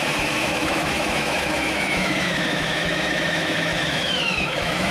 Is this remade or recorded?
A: remade